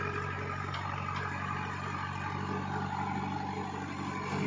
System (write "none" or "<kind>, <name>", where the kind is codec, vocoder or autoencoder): none